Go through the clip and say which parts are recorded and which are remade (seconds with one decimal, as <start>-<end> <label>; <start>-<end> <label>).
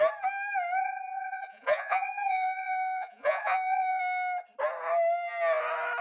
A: 0.0-0.8 recorded; 0.8-4.0 remade; 4.0-6.0 recorded